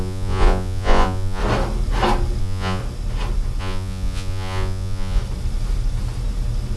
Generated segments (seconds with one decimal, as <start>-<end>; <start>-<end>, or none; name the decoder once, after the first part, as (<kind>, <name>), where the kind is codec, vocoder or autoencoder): 0.0-1.4 (vocoder, Vocos); 2.4-2.8; 3.6-5.2